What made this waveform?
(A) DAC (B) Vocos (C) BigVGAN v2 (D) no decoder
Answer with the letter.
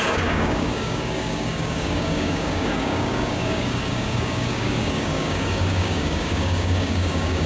A